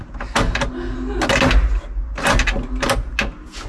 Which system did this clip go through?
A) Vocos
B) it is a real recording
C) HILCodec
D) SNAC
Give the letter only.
B